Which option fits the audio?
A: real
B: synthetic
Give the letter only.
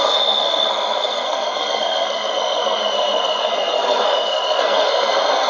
B